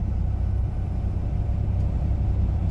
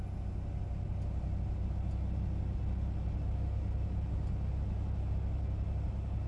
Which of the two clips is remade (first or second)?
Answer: first